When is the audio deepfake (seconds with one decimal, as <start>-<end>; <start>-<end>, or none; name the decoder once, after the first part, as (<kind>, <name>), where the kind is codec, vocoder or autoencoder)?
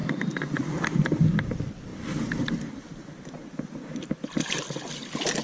none